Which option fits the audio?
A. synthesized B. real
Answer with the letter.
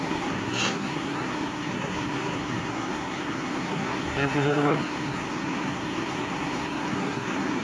A